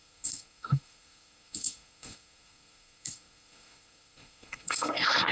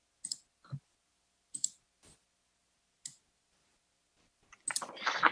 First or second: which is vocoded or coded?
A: first